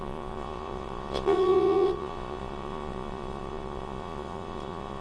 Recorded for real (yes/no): no